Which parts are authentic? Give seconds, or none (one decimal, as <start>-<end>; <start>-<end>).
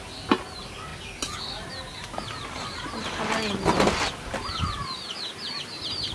0.9-4.1